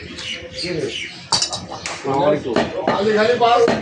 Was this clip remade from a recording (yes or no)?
no